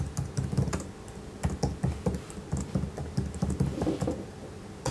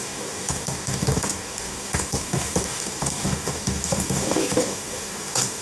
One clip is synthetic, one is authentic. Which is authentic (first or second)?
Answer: first